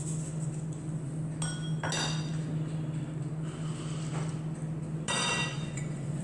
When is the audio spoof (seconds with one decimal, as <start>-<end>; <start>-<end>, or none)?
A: 5.5-6.2